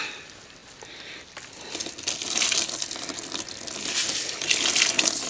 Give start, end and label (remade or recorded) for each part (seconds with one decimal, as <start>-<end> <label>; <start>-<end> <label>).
0.0-5.3 recorded